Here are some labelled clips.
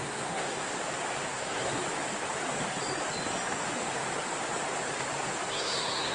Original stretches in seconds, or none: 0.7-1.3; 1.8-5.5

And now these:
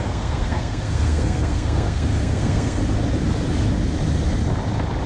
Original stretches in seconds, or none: 2.8-5.1

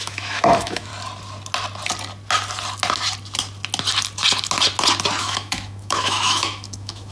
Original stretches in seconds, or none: 0.9-5.2

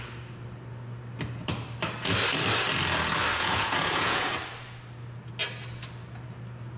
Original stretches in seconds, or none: 0.0-3.3; 4.3-6.8